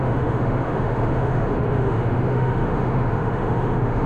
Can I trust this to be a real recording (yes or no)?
no